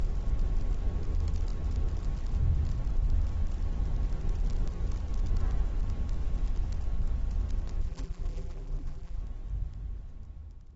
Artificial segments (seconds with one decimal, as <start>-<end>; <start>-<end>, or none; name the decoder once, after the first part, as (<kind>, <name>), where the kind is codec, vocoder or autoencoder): 7.8-9.2 (vocoder, BigVGAN v2)